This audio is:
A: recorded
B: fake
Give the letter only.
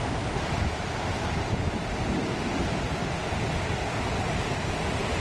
A